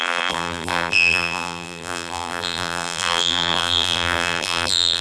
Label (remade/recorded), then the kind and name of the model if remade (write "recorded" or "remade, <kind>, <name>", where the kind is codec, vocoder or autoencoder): remade, vocoder, BigVGAN v2